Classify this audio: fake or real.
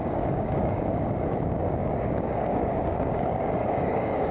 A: fake